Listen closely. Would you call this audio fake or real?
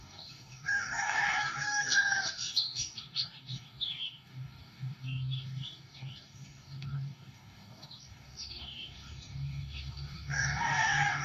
fake